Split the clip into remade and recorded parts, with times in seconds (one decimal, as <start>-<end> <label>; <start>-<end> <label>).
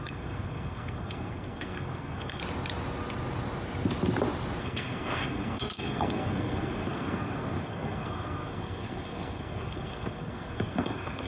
0.0-2.4 remade; 2.4-4.6 recorded; 4.6-11.3 remade